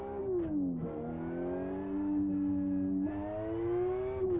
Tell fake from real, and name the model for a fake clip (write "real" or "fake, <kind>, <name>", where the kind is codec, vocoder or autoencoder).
real